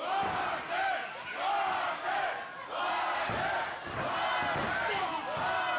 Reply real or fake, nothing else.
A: real